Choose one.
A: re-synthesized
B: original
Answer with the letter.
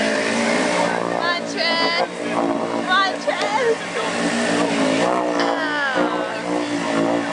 B